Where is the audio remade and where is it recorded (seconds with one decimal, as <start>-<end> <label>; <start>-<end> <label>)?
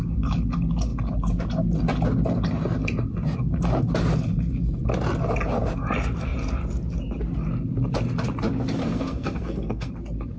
0.0-8.8 recorded; 8.8-9.9 remade; 9.9-10.4 recorded